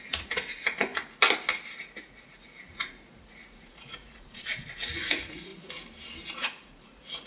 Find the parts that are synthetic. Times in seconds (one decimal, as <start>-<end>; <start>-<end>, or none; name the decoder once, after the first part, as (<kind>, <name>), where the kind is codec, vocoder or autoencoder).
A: 0.0-0.9 (vocoder, Vocos); 1.9-5.5; 6.3-7.3